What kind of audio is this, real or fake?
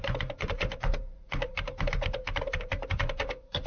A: fake